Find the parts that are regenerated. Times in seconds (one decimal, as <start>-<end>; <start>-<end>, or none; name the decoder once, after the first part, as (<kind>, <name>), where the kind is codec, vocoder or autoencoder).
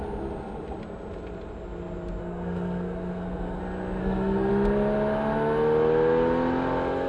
2.2-3.6 (codec, SNAC); 4.0-4.5